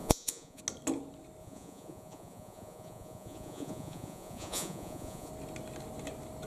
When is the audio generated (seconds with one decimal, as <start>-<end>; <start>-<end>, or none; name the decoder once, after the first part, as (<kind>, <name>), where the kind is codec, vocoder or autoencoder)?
0.0-0.6 (vocoder, Vocos); 1.4-5.3